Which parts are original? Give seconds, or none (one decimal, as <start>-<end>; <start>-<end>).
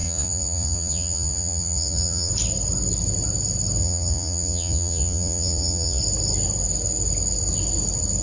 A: 2.3-3.8; 6.0-8.2